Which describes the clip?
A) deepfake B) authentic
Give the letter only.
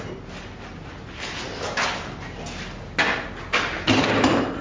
B